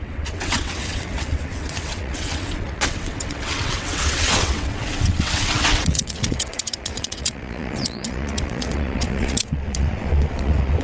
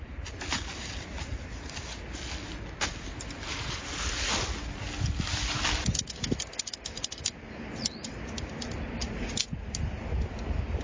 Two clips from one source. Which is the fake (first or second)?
first